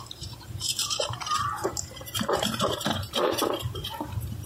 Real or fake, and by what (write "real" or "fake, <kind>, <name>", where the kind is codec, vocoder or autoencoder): fake, vocoder, BigVGAN v2